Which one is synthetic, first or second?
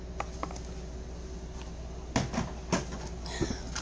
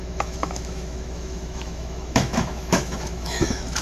second